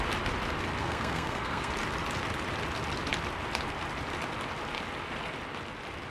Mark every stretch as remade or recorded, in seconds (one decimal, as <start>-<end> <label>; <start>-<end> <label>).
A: 0.0-0.8 recorded; 0.8-1.7 remade; 1.7-6.1 recorded